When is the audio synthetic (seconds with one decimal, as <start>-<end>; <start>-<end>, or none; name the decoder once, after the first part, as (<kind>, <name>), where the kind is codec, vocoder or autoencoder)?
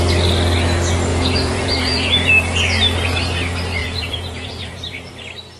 1.1-2.3 (vocoder, Vocos); 3.8-5.1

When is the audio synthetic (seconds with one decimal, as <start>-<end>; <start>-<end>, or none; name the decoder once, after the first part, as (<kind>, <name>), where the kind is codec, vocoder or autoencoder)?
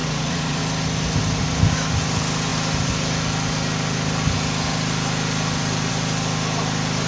0.0-0.6 (vocoder, Vocos)